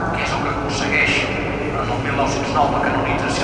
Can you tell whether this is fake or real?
real